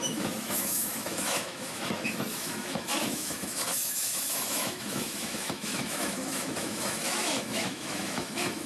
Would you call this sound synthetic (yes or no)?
yes